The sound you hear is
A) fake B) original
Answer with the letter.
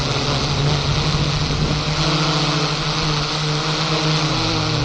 B